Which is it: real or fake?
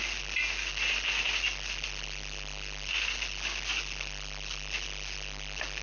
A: real